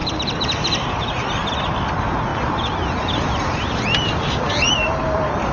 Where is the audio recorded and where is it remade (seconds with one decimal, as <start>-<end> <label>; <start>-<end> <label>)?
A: 0.0-0.6 recorded; 0.6-5.5 remade